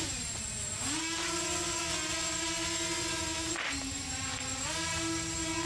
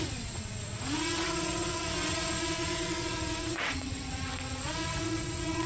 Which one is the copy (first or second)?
second